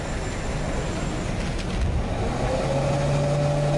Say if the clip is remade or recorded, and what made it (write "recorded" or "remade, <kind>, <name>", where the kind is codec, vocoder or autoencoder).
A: recorded